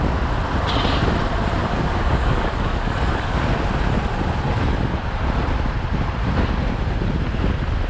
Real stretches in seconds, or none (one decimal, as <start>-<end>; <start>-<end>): 0.0-1.6; 3.4-7.9